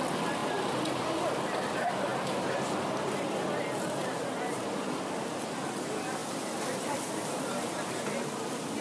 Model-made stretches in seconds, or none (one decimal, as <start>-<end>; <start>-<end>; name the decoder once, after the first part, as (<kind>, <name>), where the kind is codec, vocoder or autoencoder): 6.2-7.7 (vocoder, BigVGAN v2)